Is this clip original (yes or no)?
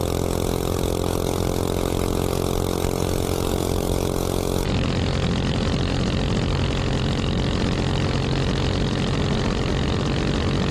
yes